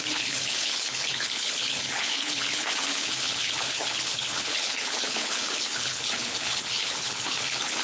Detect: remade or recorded remade